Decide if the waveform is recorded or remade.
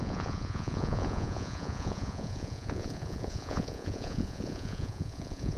remade